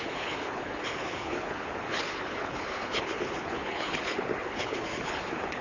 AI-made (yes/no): yes